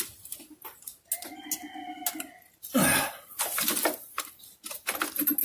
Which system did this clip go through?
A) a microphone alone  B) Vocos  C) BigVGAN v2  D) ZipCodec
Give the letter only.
A